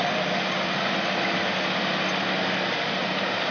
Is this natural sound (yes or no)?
yes